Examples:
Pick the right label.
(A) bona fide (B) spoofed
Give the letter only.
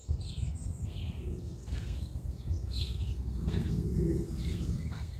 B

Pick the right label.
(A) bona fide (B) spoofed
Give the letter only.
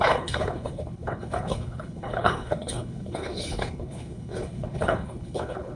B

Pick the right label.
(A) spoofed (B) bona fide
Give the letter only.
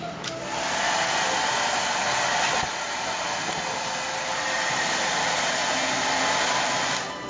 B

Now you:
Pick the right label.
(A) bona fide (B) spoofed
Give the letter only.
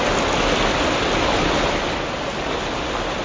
A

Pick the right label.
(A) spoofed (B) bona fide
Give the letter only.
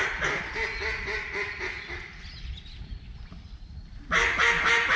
B